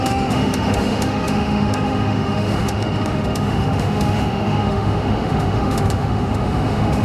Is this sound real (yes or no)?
no